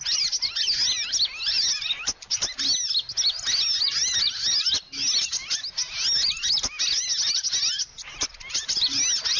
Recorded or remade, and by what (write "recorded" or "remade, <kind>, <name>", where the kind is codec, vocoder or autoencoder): recorded